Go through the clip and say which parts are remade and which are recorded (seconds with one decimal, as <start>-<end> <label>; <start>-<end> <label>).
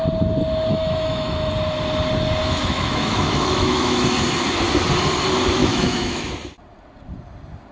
0.0-0.7 recorded; 0.7-1.5 remade; 1.5-2.4 recorded; 2.4-4.0 remade; 4.0-5.6 recorded; 5.6-6.3 remade; 6.3-7.7 recorded